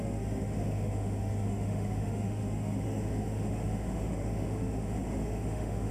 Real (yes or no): no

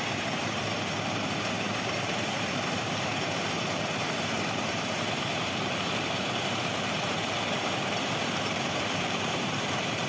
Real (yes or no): no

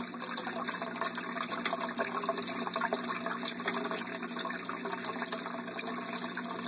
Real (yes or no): yes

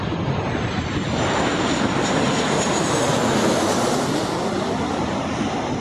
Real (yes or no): yes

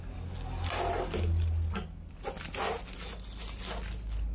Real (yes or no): yes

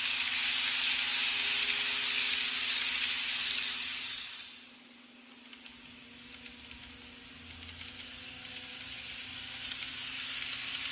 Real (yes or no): yes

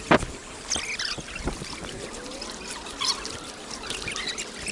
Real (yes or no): yes